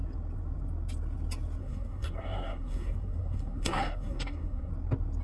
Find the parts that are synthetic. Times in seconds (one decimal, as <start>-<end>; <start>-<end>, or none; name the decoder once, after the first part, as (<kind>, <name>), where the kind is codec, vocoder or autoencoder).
1.6-4.7 (codec, SNAC)